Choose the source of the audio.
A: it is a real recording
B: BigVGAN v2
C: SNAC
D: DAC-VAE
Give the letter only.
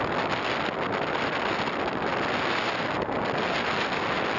A